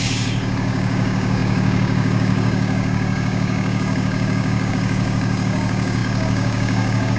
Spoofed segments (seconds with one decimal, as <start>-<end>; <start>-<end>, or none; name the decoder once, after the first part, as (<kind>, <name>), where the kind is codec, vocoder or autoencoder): 0.0-7.2 (codec, DAC)